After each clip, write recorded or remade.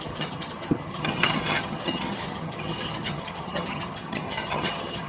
remade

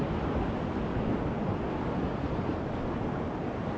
recorded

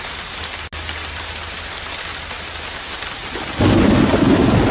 recorded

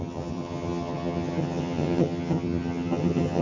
remade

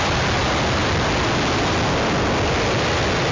recorded